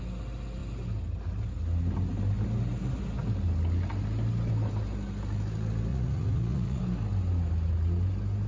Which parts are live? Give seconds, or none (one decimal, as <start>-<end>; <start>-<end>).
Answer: 0.0-5.9; 6.8-8.5